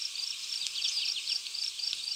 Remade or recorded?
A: recorded